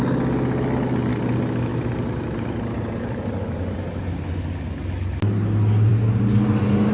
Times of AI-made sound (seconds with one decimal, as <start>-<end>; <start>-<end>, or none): 1.7-4.0